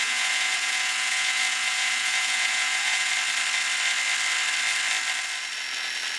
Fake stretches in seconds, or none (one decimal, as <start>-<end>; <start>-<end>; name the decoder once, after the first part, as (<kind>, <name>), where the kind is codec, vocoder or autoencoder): 0.0-3.1 (vocoder, Vocos)